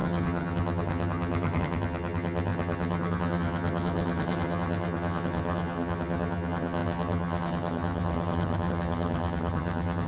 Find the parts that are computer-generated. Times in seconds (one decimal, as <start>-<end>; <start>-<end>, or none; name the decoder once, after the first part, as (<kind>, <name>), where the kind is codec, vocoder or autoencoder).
0.0-10.1 (vocoder, HiFi-GAN)